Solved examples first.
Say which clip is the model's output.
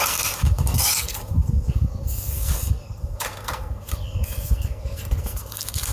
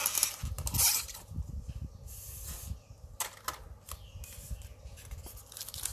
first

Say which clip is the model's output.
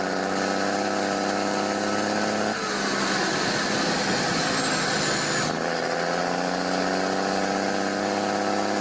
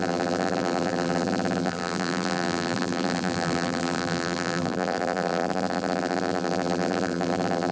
second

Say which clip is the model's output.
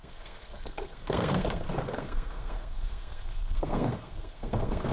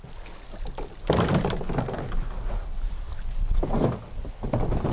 first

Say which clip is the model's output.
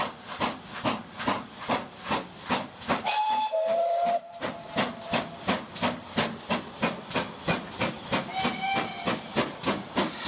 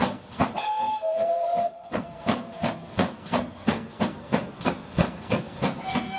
second